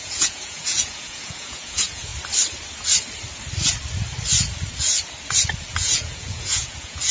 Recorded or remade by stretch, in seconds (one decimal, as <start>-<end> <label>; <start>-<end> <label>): 0.0-2.1 remade; 2.1-5.7 recorded; 5.7-7.1 remade